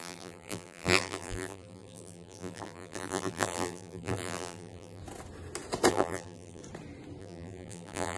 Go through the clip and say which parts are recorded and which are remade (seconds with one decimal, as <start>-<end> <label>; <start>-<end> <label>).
0.0-5.0 remade; 5.0-5.9 recorded; 5.9-6.6 remade; 6.6-7.2 recorded; 7.2-8.2 remade